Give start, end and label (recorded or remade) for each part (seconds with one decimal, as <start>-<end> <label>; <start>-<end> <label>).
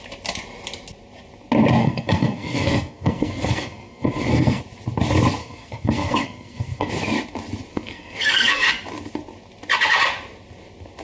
0.0-1.8 recorded; 1.8-4.6 remade; 4.6-5.4 recorded; 5.4-6.9 remade; 6.9-7.7 recorded; 7.7-8.7 remade; 8.7-11.0 recorded